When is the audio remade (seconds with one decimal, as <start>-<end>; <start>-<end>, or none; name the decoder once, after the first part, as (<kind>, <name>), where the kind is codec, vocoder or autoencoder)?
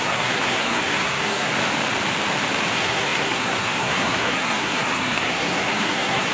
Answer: 0.0-1.5 (codec, SNAC); 2.7-6.3